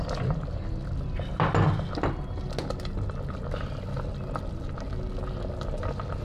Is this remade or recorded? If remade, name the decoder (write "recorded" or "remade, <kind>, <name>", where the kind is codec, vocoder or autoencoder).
recorded